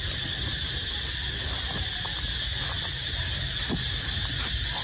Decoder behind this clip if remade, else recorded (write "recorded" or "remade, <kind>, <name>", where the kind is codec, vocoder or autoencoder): recorded